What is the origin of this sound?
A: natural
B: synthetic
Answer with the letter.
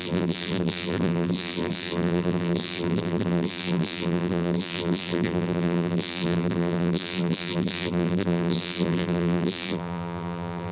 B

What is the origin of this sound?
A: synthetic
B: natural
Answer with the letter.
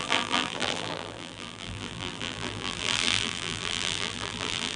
A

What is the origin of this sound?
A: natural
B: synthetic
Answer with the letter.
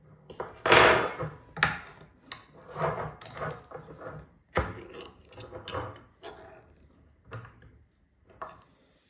A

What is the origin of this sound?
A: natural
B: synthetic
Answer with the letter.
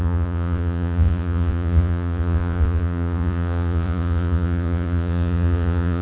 B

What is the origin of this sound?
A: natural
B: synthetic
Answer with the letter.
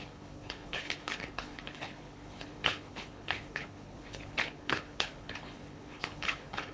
B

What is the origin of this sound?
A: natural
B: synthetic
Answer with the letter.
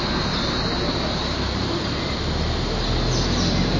A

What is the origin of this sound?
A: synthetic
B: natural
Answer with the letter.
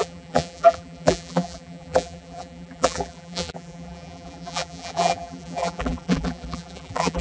A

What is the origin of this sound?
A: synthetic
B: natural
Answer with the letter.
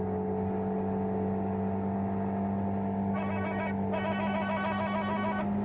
B